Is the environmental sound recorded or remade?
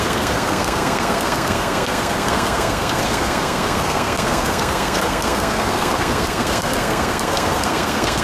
remade